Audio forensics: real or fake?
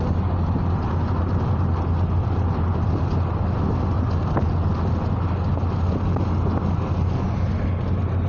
real